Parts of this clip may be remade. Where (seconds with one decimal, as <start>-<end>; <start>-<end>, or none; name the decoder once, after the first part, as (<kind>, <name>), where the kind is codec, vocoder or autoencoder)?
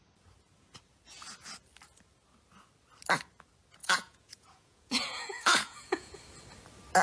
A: 3.8-6.2 (vocoder, Vocos)